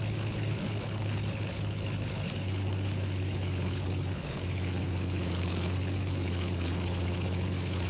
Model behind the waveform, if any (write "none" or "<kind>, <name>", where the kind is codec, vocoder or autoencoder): codec, HILCodec